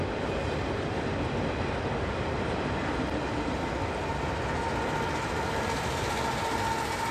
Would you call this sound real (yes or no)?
yes